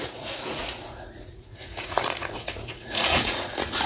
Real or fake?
fake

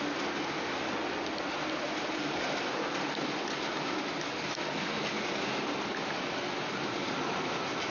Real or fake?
real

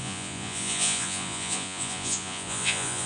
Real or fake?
fake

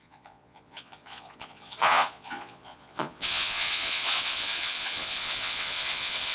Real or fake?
fake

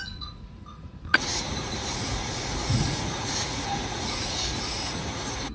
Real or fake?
fake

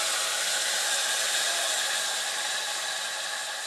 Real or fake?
real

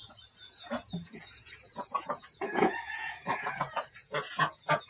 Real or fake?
fake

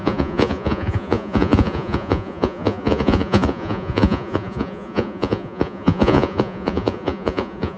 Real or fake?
fake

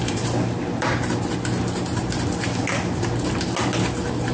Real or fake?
real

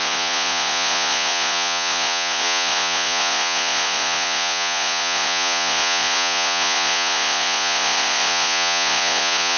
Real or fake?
fake